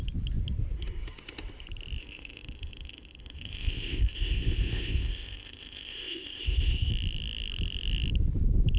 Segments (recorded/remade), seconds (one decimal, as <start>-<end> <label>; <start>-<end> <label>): 0.0-2.0 recorded; 2.0-6.9 remade; 6.9-8.8 recorded